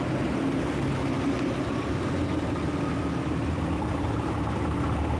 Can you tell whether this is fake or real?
real